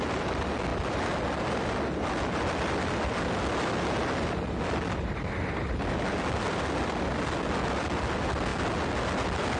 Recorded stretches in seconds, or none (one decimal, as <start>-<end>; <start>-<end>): 0.0-9.6